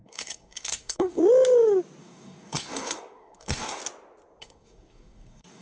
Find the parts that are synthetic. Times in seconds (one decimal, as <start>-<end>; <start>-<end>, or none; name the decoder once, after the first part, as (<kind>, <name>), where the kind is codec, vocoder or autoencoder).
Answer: 0.0-1.2 (codec, SNAC); 2.0-3.8; 4.4-5.6